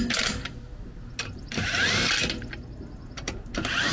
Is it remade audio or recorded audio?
recorded